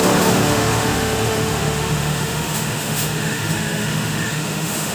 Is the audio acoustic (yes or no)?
no